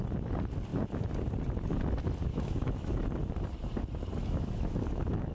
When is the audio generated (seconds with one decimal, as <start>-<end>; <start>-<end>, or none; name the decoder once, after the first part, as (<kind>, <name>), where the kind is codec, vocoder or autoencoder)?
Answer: 2.3-2.9 (autoencoder, DAC-VAE); 4.2-5.3